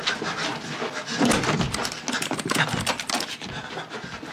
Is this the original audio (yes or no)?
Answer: yes